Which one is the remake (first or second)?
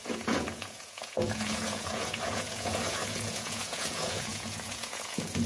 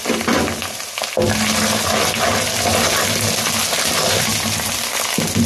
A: first